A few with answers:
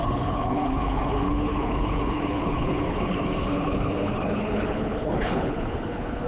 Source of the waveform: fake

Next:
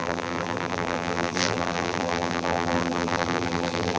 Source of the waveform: fake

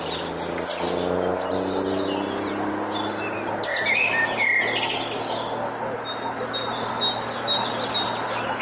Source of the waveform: real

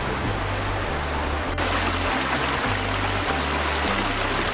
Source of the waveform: real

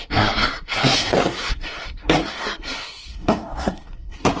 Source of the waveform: fake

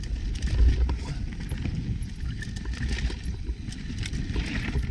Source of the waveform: real